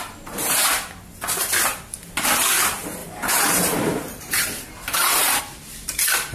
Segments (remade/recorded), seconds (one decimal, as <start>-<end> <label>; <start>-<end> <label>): 0.0-3.0 recorded; 3.0-5.4 remade; 5.4-6.3 recorded